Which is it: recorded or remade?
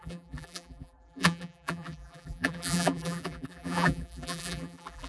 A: remade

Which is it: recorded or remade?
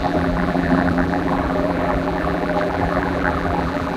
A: remade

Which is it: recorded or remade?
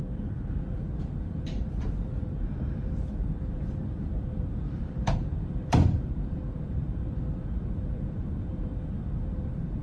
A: remade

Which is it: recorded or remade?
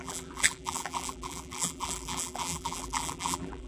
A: remade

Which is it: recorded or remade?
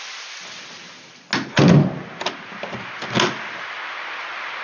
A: recorded